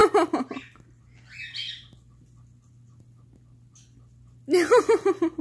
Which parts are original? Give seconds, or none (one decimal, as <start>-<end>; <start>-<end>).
0.0-5.4